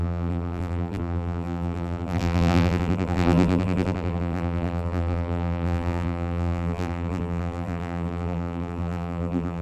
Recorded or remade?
remade